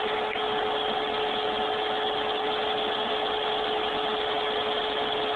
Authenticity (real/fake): real